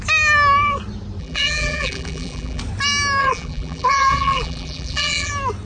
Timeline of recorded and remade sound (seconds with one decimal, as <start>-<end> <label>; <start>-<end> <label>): 0.0-1.2 recorded; 1.2-2.6 remade; 2.6-3.2 recorded; 3.2-5.3 remade; 5.3-5.7 recorded

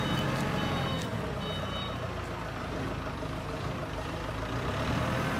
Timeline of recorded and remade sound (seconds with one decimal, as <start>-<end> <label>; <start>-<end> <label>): 0.0-5.4 recorded

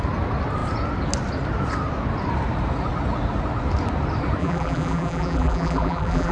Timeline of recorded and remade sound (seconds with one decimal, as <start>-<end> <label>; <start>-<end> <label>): 0.0-4.4 recorded; 4.4-6.3 remade

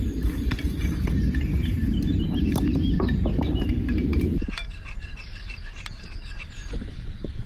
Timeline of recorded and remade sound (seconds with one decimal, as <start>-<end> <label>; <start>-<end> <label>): 0.0-7.5 remade

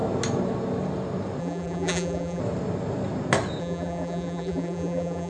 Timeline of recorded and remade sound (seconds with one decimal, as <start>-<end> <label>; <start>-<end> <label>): 0.0-1.4 recorded; 1.4-2.4 remade; 2.4-3.6 recorded; 3.6-5.3 remade

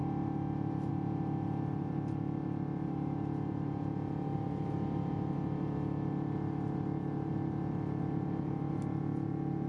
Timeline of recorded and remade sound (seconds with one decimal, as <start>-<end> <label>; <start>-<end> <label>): 0.0-9.7 recorded

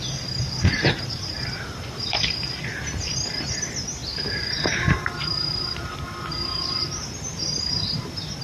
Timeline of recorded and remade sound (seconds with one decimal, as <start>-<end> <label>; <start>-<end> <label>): 0.0-0.7 recorded; 0.7-2.5 remade; 2.5-4.0 recorded; 4.0-8.4 remade

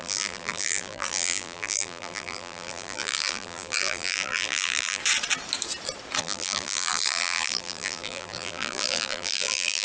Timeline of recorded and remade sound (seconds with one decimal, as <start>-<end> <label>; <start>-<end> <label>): 0.0-5.0 remade; 5.0-6.2 recorded; 6.2-9.8 remade